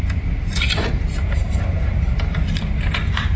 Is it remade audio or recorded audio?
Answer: recorded